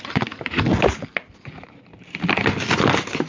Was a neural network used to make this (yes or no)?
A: no